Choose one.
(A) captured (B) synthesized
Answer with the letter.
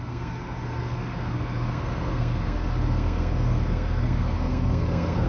B